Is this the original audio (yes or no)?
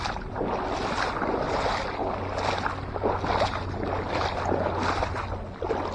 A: yes